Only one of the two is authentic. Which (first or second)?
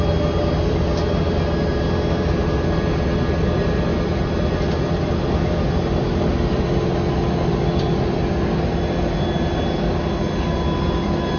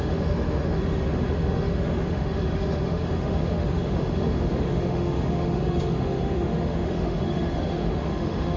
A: first